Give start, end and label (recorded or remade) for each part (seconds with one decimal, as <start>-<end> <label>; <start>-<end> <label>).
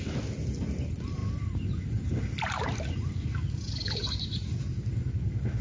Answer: 0.0-5.6 recorded